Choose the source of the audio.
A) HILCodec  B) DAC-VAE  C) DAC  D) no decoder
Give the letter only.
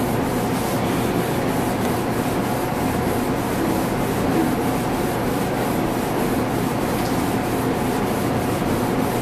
D